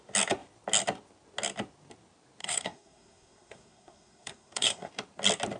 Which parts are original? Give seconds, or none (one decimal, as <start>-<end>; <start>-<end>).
0.0-2.4; 4.9-5.6